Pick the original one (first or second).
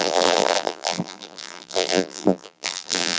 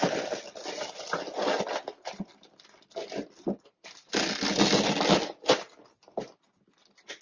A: second